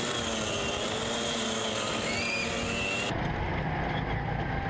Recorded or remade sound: recorded